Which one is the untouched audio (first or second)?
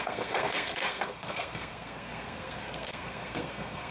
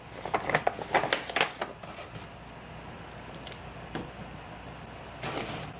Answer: second